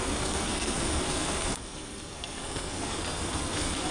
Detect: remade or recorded remade